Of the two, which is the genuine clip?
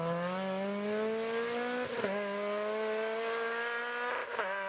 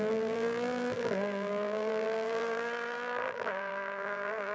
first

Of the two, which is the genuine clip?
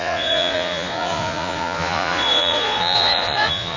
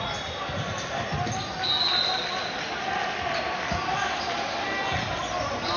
second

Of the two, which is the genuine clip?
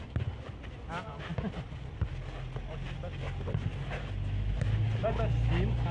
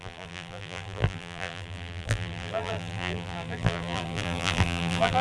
first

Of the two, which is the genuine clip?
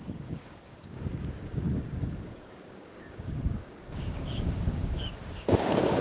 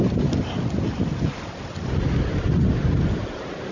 second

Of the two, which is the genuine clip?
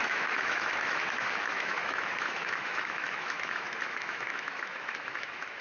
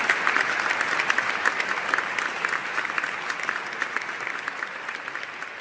second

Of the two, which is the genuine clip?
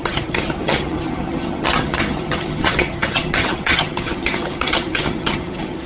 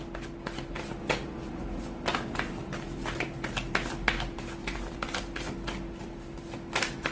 second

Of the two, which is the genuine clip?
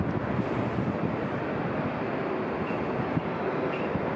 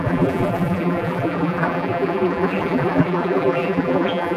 first